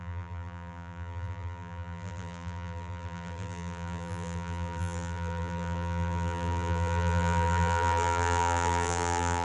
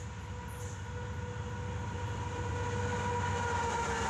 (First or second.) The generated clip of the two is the first